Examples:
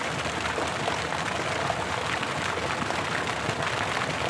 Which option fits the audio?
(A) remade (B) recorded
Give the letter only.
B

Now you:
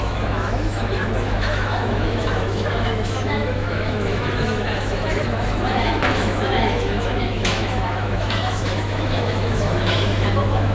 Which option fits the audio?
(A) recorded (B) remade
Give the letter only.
B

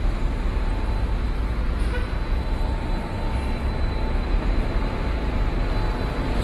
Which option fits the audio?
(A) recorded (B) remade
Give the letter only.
A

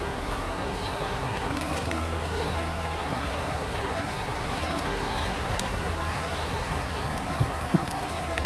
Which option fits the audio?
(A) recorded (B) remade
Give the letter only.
B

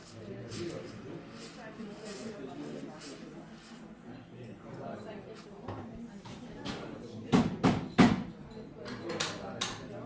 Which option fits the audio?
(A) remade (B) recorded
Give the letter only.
B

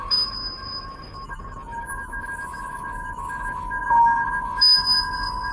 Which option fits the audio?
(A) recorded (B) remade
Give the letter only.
B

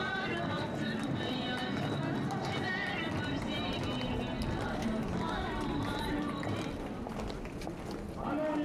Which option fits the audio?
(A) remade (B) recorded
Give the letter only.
B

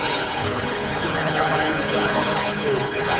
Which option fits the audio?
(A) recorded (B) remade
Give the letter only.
B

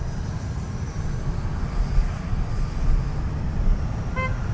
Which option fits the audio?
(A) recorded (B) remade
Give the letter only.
A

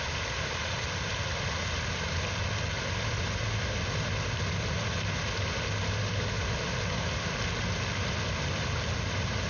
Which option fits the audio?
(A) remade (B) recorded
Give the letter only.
B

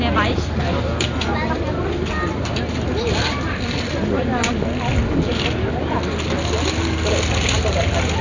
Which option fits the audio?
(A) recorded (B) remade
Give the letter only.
A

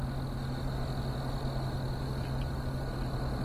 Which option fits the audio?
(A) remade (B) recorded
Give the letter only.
B